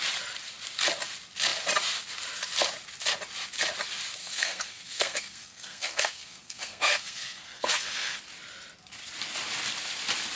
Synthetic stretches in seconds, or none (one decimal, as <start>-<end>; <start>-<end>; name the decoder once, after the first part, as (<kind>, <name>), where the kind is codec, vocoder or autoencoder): 4.2-8.2 (codec, SNAC)